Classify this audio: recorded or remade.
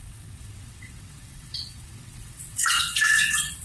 remade